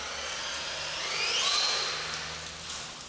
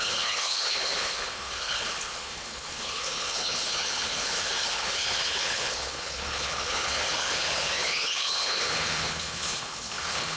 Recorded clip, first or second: first